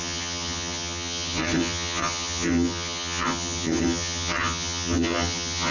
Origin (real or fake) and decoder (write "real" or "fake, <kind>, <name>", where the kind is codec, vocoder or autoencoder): fake, vocoder, HiFi-GAN